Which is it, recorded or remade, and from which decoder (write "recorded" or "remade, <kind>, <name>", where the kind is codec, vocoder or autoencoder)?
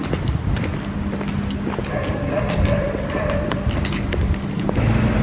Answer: recorded